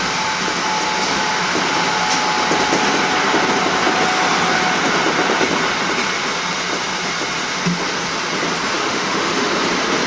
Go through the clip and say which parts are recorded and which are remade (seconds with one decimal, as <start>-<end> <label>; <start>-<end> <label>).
0.0-8.8 recorded; 8.8-9.5 remade; 9.5-10.1 recorded